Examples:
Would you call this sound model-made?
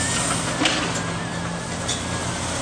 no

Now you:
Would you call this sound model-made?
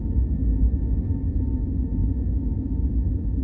no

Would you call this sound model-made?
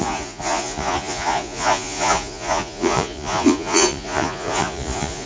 yes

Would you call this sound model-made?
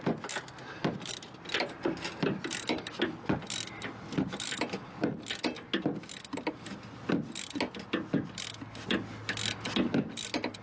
no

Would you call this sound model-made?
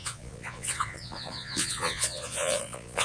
yes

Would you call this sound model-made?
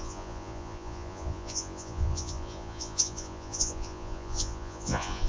yes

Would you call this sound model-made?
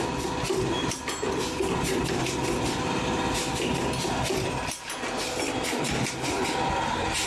no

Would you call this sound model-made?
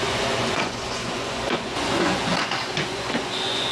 yes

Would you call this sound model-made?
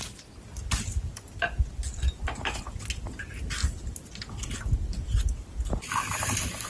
no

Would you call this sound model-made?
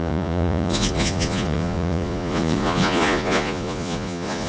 yes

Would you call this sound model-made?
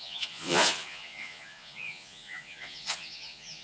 yes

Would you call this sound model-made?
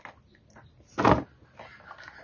no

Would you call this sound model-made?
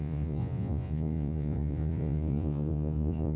yes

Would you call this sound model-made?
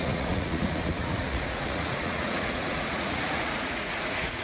yes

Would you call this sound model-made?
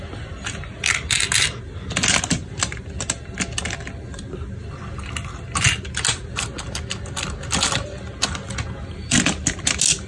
no